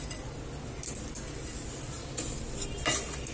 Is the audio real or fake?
real